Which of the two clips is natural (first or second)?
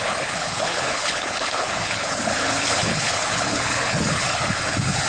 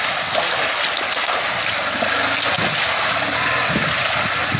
second